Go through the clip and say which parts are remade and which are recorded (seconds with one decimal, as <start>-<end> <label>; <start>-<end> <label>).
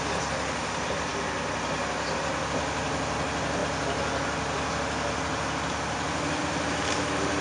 0.0-7.4 recorded